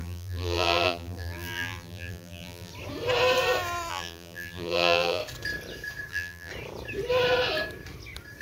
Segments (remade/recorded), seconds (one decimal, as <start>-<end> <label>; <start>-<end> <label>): 0.0-2.7 remade; 2.7-3.9 recorded; 3.9-5.2 remade; 5.2-6.1 recorded; 6.1-6.5 remade; 6.5-8.4 recorded